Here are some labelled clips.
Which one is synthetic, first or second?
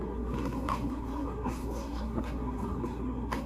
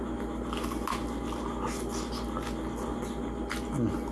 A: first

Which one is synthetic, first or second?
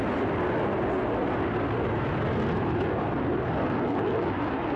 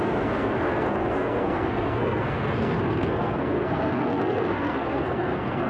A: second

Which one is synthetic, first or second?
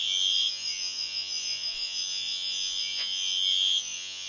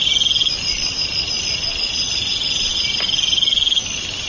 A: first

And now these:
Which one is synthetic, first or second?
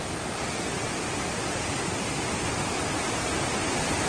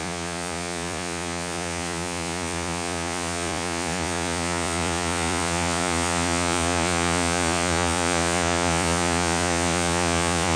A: second